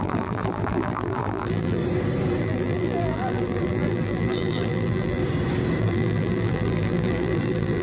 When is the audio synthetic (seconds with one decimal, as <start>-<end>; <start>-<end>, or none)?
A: 0.0-1.8; 2.4-5.2; 5.8-7.8